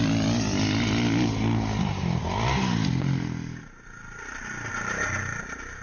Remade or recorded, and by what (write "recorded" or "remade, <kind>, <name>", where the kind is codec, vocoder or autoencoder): recorded